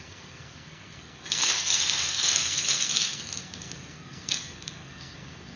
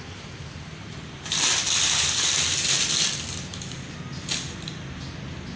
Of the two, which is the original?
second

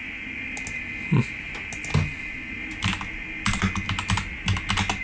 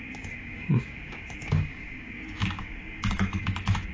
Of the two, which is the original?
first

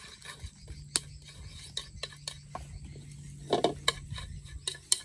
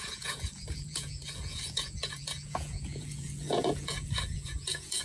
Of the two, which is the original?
first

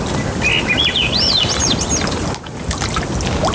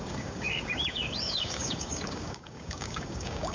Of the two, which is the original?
first